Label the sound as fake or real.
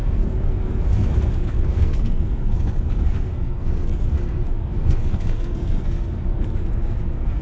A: fake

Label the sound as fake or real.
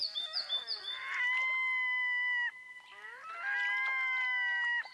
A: real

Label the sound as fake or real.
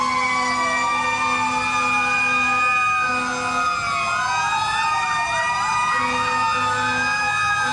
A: real